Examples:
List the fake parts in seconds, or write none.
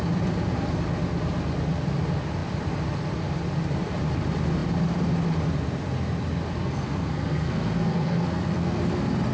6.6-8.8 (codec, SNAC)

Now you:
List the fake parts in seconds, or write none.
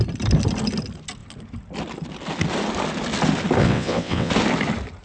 3.6-4.3 (vocoder, WaveNeXt)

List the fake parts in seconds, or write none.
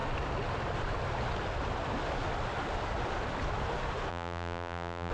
4.1-5.1 (vocoder, BigVGAN v2)